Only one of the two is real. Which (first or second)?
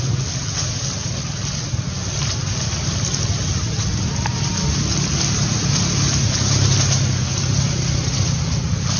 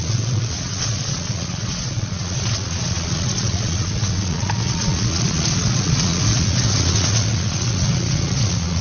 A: first